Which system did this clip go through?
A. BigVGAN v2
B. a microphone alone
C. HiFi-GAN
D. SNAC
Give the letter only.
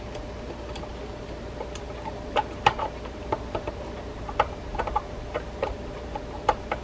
A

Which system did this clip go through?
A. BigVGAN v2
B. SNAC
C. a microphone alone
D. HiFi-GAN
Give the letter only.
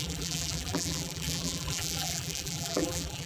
A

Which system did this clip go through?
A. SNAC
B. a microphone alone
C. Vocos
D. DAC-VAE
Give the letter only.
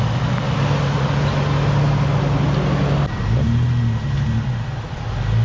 B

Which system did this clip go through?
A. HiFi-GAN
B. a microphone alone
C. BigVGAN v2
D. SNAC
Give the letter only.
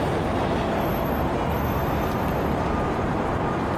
B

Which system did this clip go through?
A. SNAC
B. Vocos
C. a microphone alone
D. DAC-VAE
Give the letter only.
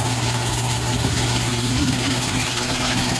A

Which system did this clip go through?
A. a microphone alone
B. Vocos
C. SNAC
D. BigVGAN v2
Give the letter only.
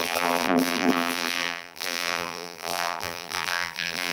D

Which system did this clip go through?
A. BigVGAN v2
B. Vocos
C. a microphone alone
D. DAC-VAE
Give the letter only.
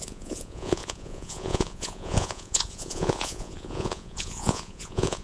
B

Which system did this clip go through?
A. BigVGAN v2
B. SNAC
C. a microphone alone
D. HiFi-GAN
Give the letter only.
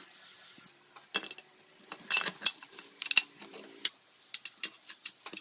C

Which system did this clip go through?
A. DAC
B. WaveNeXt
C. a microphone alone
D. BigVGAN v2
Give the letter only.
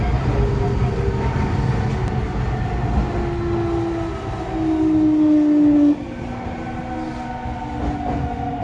C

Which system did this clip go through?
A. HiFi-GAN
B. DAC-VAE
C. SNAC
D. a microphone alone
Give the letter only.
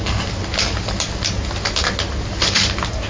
D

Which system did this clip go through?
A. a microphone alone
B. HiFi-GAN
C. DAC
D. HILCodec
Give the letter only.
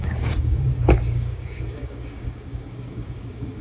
C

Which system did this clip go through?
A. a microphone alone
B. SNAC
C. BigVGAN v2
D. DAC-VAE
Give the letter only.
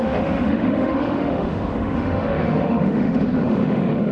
D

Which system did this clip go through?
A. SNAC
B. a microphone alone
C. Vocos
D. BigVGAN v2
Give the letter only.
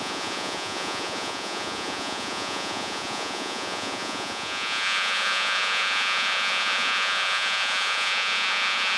C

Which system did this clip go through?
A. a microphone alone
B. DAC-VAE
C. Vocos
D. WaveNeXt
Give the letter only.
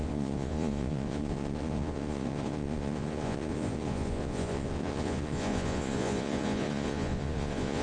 C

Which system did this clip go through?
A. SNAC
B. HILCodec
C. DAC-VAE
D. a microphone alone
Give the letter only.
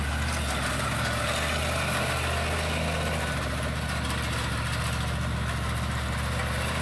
D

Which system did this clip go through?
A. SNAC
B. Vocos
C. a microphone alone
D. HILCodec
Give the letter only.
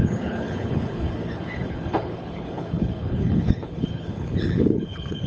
D